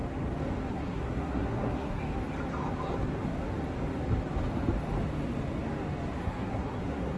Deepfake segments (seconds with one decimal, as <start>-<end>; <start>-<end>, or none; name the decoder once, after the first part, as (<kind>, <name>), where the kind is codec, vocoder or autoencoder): 0.7-2.0 (codec, SNAC); 6.2-7.2